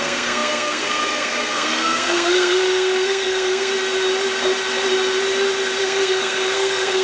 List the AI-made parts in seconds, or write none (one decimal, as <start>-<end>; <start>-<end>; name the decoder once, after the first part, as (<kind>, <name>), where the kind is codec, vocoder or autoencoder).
0.0-3.7 (codec, SNAC); 5.8-7.0